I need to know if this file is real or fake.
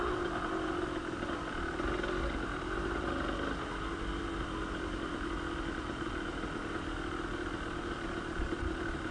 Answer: real